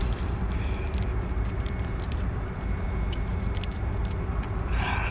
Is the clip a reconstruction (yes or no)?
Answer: no